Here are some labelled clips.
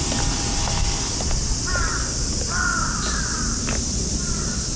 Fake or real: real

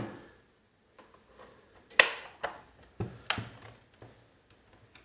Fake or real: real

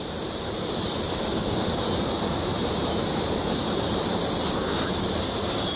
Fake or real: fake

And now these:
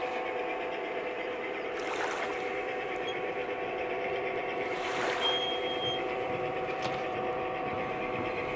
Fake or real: fake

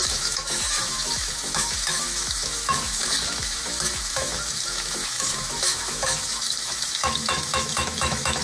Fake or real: fake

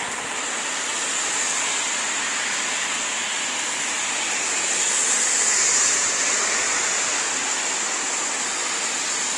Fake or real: real